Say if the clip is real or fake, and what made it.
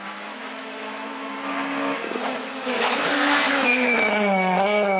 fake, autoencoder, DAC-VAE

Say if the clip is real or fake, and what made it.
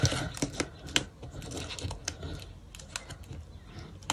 real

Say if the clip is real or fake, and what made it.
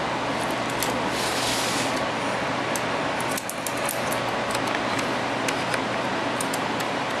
real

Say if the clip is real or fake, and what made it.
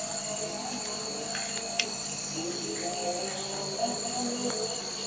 real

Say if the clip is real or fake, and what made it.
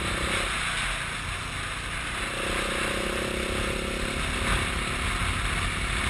real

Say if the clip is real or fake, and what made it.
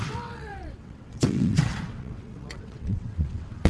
fake, vocoder, WaveNeXt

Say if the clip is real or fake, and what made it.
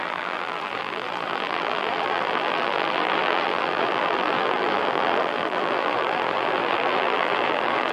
fake, vocoder, BigVGAN v2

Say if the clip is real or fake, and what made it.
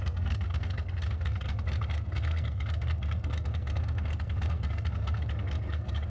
fake, codec, SNAC